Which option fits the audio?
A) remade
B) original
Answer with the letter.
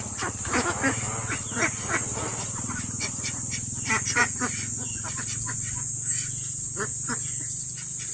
B